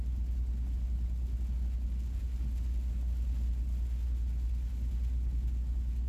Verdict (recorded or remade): recorded